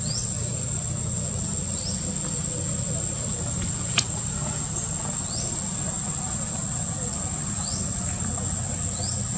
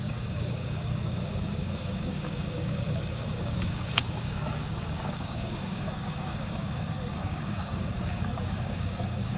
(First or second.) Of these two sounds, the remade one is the second